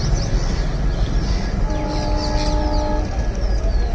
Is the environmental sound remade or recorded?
recorded